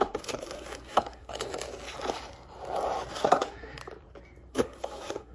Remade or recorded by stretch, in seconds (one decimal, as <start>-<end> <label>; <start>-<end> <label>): 0.0-1.5 remade; 1.5-3.1 recorded; 3.1-3.8 remade; 3.8-4.5 recorded; 4.5-5.3 remade